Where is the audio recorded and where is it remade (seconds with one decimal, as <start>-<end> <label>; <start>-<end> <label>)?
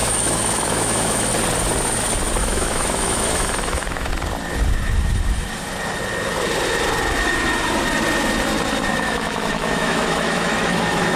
0.0-1.3 remade; 1.3-2.4 recorded; 2.4-4.1 remade; 4.1-8.9 recorded; 8.9-11.2 remade